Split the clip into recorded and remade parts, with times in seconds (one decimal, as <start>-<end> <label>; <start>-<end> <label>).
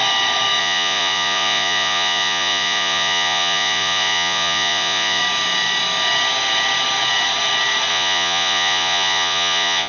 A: 0.0-0.6 recorded; 0.6-5.2 remade; 5.2-7.9 recorded; 7.9-9.9 remade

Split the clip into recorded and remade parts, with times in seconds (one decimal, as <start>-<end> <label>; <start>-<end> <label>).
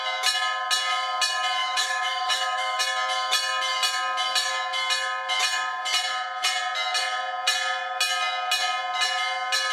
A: 0.0-1.6 recorded; 1.6-2.8 remade; 2.8-9.7 recorded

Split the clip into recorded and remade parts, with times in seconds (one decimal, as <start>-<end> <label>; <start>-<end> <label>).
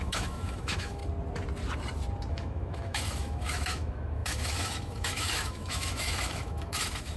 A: 0.0-1.0 remade; 1.0-2.3 recorded; 2.3-7.2 remade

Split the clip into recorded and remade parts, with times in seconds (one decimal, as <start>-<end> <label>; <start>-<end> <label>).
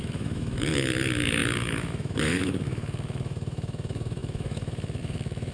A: 0.0-5.5 remade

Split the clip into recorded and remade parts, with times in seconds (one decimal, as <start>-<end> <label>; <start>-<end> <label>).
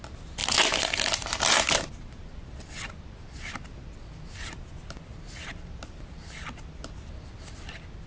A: 0.0-8.1 recorded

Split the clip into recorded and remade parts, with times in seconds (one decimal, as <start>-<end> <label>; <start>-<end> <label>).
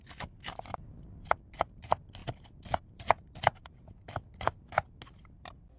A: 0.0-5.8 recorded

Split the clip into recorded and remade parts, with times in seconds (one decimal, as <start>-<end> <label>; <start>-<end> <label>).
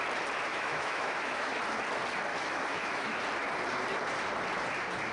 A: 0.0-0.5 recorded; 0.5-1.6 remade; 1.6-2.3 recorded; 2.3-3.2 remade; 3.2-5.1 recorded